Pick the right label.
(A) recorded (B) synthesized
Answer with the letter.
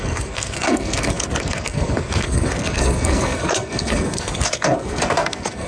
B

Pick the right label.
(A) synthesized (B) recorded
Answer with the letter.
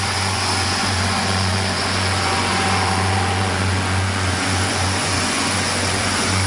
A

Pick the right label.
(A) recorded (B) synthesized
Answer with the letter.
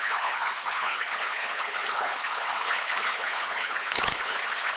B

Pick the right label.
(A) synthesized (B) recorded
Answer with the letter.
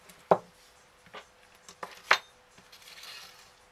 B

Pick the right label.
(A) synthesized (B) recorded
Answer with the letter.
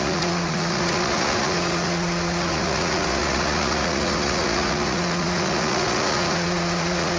A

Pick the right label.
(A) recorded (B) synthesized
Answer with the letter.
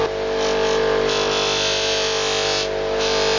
A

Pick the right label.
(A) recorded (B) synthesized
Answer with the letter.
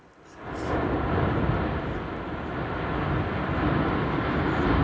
A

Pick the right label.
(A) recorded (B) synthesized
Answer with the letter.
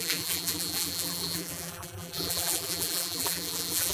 B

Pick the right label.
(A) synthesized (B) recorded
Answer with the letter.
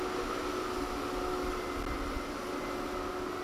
B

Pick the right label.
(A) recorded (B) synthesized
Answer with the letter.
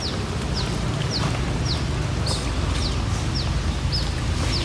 A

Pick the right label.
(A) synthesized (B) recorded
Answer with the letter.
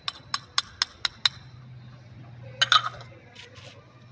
B